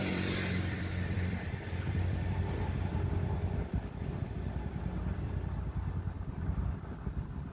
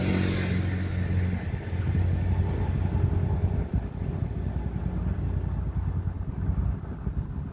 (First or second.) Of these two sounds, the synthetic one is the first